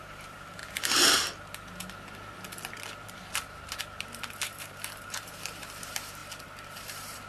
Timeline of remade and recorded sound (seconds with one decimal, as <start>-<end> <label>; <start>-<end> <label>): 0.0-0.6 remade; 0.6-4.5 recorded; 4.5-7.3 remade